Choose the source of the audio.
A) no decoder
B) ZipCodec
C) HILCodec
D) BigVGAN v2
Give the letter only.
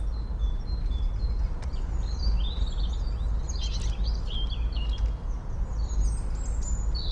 A